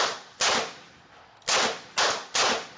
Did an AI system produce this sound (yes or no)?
no